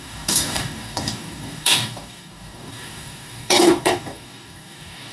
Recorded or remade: remade